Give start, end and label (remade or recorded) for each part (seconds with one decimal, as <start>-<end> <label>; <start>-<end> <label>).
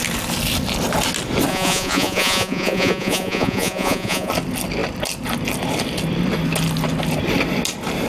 0.0-1.5 recorded; 1.5-4.3 remade; 4.3-8.1 recorded